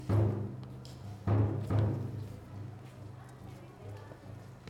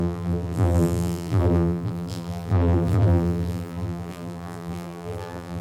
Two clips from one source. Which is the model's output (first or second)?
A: second